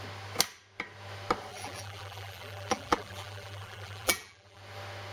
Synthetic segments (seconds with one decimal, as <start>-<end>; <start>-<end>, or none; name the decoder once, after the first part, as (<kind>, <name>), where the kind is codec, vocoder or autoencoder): 1.5-4.6 (vocoder, BigVGAN v2)